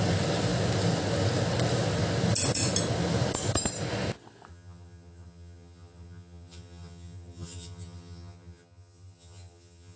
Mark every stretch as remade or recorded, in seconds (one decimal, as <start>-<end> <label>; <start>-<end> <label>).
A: 0.0-4.5 recorded; 4.5-10.0 remade